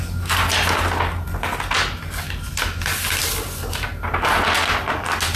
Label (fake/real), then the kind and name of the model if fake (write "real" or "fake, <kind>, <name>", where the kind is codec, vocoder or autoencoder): real